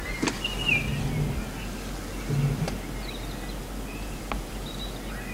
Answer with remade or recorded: recorded